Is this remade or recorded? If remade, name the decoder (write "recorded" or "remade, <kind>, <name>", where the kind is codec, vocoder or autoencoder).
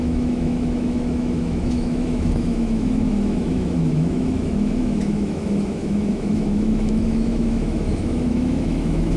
remade, autoencoder, DAC-VAE